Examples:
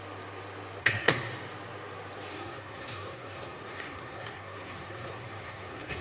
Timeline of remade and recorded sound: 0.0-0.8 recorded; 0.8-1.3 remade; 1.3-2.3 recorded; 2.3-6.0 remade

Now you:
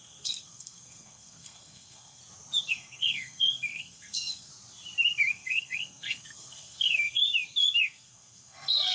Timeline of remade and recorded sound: 0.0-2.2 remade; 2.2-2.7 recorded; 2.7-4.5 remade; 4.5-5.3 recorded; 5.3-7.2 remade; 7.2-7.8 recorded; 7.8-8.9 remade

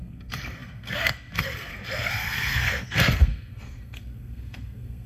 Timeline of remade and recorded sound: 0.0-5.1 remade